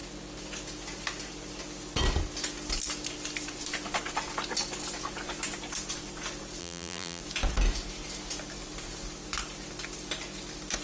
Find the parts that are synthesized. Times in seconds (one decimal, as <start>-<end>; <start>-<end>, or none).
6.6-7.2